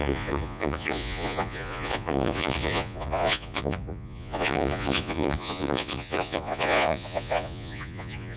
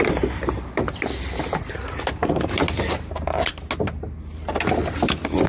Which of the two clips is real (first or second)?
second